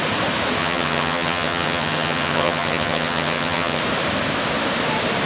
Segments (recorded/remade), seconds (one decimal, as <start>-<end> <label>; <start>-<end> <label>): 0.0-0.6 recorded; 0.6-3.8 remade; 3.8-5.3 recorded